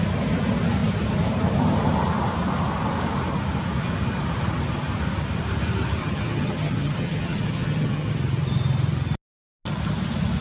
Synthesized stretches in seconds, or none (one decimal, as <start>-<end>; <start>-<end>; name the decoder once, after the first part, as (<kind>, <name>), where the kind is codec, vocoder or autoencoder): 6.0-8.1 (vocoder, HiFi-GAN)